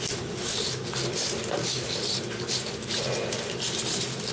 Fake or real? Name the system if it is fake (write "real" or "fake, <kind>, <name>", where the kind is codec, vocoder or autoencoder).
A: real